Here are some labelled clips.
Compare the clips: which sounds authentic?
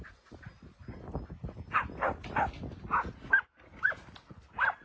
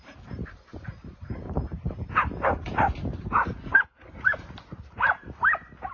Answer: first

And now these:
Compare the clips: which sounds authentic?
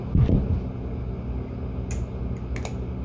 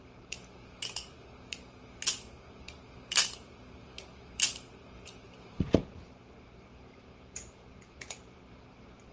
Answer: first